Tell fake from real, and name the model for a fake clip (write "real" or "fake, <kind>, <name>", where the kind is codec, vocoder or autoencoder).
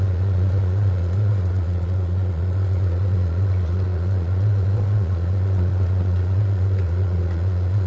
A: fake, vocoder, Vocos